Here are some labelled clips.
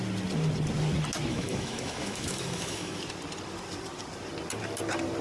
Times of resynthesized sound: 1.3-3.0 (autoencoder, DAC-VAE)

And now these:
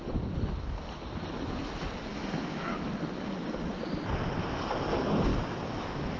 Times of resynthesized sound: 2.1-2.9 (autoencoder, DAC-VAE); 5.3-6.2

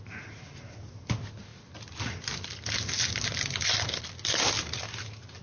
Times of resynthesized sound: none

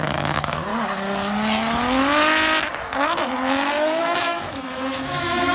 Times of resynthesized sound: 0.0-0.7 (autoencoder, DAC-VAE); 4.0-5.5